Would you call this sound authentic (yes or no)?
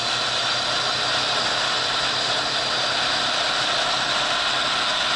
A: yes